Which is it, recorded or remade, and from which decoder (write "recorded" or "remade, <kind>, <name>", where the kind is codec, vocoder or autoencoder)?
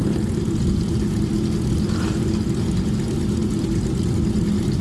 recorded